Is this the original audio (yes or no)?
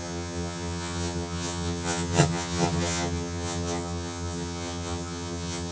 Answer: no